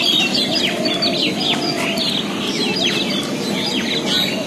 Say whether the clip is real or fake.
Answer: real